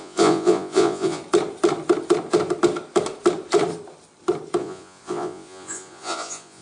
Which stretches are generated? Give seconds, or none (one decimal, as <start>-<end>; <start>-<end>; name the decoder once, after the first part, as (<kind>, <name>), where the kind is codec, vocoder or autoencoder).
0.0-1.2 (vocoder, Vocos); 4.6-6.6

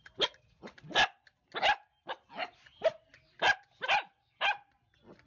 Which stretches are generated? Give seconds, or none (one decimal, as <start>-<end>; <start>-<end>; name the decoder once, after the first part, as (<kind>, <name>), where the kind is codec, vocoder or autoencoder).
none

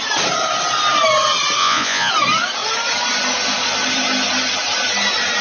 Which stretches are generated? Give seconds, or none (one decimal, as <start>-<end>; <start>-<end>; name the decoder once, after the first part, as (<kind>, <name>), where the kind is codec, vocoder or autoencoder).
1.6-2.1 (vocoder, Vocos)

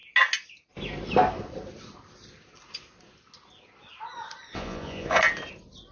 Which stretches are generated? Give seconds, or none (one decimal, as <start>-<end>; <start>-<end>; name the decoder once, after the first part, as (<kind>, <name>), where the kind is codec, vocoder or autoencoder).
4.5-5.2 (vocoder, Vocos)